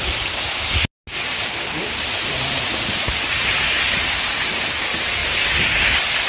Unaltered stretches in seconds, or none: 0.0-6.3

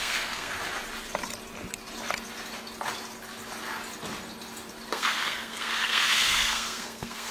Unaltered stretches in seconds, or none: 0.5-4.9